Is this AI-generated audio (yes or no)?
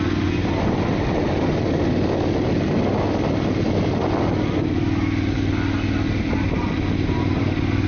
no